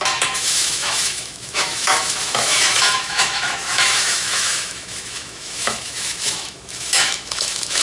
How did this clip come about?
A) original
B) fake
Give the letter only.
B